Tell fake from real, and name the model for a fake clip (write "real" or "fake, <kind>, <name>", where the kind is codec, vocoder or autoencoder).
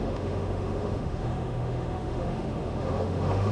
fake, autoencoder, DAC-VAE